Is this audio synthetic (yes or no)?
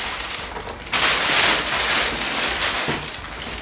no